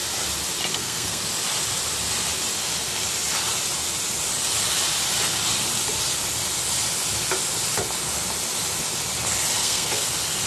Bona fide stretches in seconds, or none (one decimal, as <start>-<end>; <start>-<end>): 0.0-0.7; 1.2-9.6; 10.1-10.5